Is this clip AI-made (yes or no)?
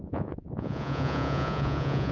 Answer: yes